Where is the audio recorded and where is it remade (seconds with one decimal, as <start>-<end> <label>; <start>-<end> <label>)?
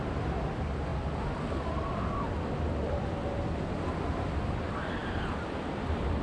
0.0-5.0 recorded; 5.0-6.2 remade